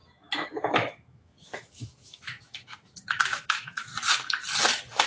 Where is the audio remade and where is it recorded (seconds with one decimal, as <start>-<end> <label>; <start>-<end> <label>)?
0.0-3.9 remade; 3.9-5.1 recorded